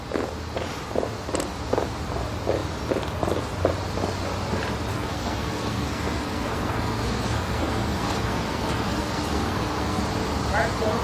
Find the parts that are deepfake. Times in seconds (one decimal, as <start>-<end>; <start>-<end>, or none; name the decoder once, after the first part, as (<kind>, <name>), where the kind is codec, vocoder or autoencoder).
4.9-10.0 (codec, SNAC)